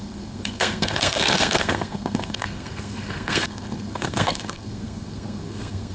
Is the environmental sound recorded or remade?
remade